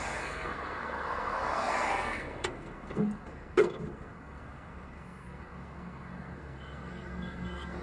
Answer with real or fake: fake